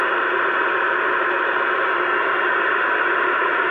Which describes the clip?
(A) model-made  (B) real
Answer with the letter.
A